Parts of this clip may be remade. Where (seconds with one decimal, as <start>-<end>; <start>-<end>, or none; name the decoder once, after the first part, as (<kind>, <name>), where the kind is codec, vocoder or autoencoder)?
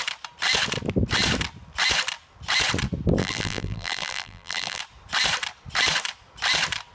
3.2-4.8 (vocoder, BigVGAN v2)